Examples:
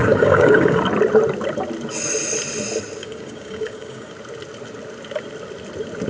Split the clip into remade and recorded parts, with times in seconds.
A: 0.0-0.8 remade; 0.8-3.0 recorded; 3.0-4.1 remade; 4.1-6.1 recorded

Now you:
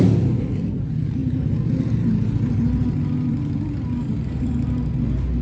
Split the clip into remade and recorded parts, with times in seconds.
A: 0.0-5.4 recorded

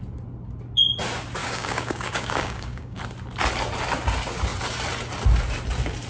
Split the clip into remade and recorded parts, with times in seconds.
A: 0.0-1.4 recorded; 1.4-3.0 remade; 3.0-6.1 recorded

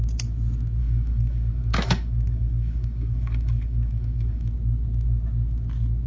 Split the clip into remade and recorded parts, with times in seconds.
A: 0.0-0.8 recorded; 0.8-4.5 remade; 4.5-6.1 recorded

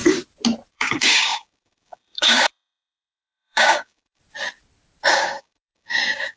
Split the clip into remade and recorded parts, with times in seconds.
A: 0.0-0.7 recorded; 0.7-4.2 remade; 4.2-5.1 recorded; 5.1-6.4 remade

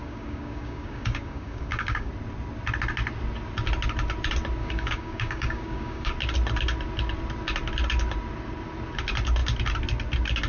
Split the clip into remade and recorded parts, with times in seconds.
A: 0.0-2.1 remade; 2.1-4.6 recorded; 4.6-6.1 remade; 6.1-10.5 recorded

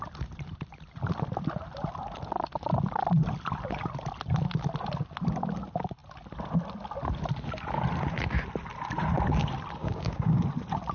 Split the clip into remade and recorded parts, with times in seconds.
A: 0.0-9.8 recorded; 9.8-10.4 remade; 10.4-10.9 recorded

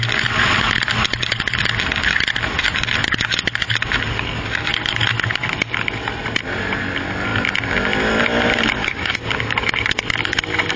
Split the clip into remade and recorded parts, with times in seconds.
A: 0.0-8.8 recorded; 8.8-9.3 remade; 9.3-10.8 recorded